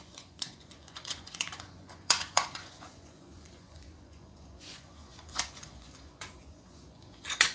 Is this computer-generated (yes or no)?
yes